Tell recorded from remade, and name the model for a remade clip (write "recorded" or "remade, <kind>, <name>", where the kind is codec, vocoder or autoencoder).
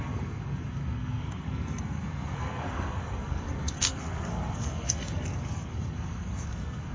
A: remade, codec, SNAC